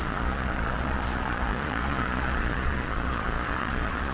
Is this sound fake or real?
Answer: fake